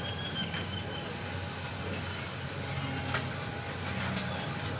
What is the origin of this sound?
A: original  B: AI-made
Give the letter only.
A